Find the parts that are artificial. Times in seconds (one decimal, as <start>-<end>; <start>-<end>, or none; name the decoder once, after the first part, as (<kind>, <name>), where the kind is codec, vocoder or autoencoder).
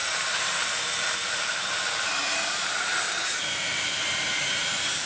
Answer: 0.0-1.8 (vocoder, BigVGAN v2); 2.2-5.1